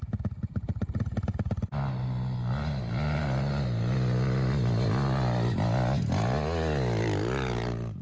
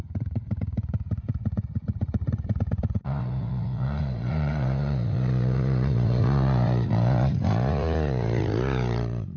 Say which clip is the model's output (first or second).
second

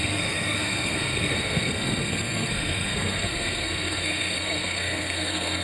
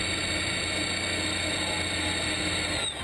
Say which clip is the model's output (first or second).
first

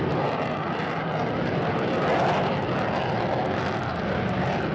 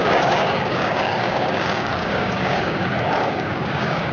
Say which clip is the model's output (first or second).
second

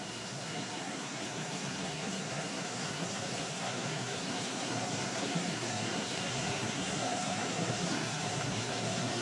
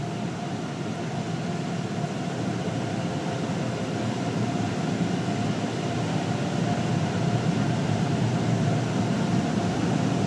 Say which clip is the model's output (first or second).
first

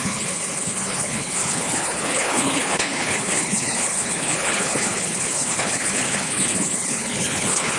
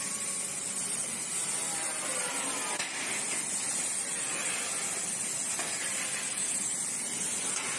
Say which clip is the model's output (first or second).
first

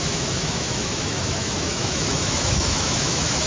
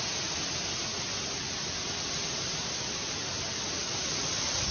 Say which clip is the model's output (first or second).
first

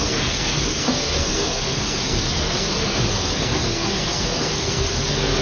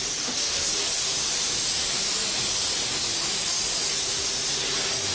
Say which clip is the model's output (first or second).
first